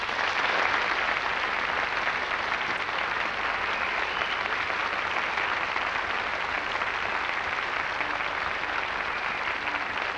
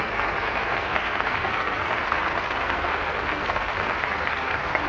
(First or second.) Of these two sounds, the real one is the first